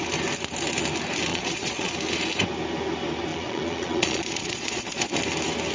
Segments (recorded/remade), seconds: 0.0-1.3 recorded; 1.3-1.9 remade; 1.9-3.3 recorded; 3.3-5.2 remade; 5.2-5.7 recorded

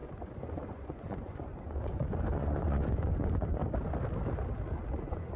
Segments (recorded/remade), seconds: 0.0-3.6 remade; 3.6-5.0 recorded; 5.0-5.4 remade